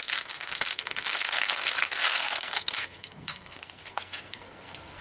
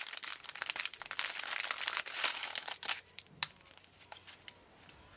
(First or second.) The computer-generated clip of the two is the first